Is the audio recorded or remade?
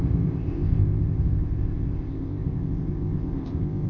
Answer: remade